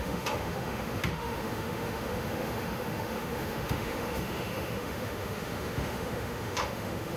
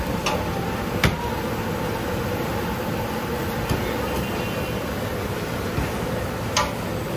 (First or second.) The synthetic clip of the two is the first